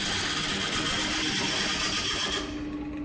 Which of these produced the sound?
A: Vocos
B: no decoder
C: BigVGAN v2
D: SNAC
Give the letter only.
B